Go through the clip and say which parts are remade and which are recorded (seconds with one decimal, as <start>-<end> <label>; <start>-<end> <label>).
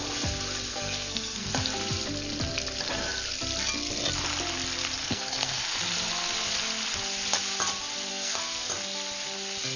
0.0-0.7 recorded; 0.7-1.5 remade; 1.5-5.0 recorded; 5.0-5.6 remade; 5.6-8.1 recorded; 8.1-8.7 remade; 8.7-9.8 recorded